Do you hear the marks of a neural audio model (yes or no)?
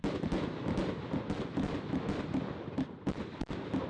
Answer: no